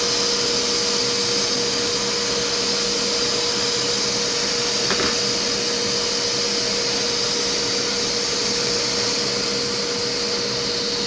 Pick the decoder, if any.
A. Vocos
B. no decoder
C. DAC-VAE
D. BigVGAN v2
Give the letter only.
B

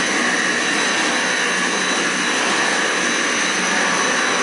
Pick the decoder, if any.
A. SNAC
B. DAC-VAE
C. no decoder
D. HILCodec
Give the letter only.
C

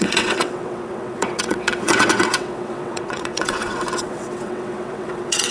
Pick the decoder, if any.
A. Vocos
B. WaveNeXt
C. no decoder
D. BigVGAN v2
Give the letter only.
B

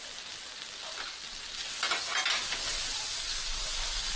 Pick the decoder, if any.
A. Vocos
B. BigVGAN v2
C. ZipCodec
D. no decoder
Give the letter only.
D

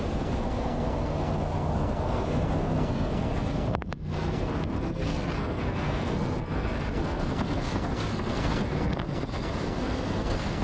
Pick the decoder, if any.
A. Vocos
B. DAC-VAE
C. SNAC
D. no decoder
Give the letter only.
C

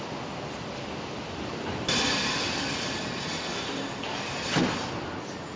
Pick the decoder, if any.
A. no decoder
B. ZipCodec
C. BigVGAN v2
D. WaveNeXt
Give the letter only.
A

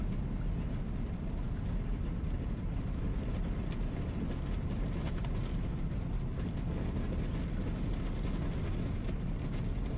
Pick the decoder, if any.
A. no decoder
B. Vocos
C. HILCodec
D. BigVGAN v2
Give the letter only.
A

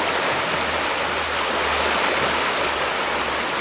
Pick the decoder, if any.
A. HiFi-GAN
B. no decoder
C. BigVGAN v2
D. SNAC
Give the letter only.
B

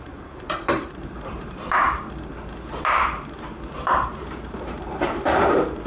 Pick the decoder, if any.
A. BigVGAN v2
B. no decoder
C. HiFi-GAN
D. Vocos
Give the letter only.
A